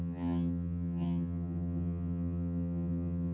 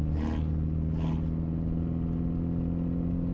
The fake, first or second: first